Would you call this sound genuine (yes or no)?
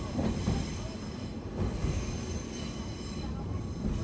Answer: yes